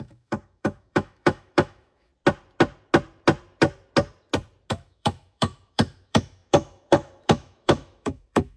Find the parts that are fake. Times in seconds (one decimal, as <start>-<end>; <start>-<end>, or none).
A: 0.0-2.1; 4.7-8.6